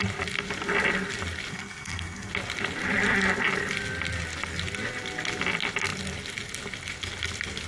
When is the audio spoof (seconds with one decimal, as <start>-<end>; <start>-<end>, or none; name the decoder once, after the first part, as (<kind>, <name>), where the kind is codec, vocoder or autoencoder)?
1.5-2.3 (codec, SNAC)